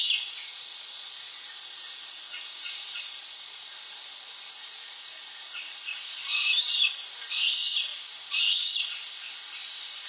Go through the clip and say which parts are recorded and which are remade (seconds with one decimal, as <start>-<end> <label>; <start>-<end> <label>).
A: 0.0-3.7 remade; 3.7-4.5 recorded; 4.5-6.2 remade; 6.2-7.3 recorded; 7.3-7.9 remade; 7.9-10.1 recorded

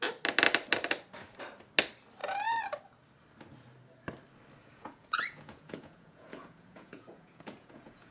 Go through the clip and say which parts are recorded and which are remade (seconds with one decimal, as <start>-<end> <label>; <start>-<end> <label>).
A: 0.0-4.6 recorded; 4.6-8.1 remade

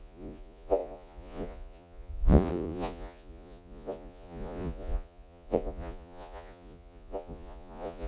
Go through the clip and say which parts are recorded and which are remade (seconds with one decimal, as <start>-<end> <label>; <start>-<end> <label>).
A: 0.0-8.1 remade

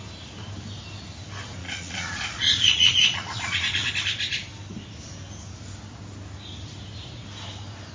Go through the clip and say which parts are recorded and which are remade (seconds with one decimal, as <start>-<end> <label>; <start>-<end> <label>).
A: 0.0-1.6 recorded; 1.6-3.9 remade; 3.9-7.9 recorded

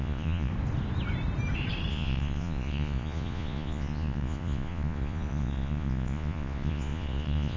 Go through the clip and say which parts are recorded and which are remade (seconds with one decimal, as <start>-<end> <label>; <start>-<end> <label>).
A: 0.0-0.5 remade; 0.5-1.9 recorded; 1.9-7.6 remade

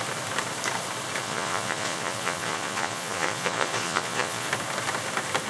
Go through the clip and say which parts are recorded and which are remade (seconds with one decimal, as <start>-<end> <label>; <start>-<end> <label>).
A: 0.0-1.2 recorded; 1.2-4.5 remade; 4.5-5.5 recorded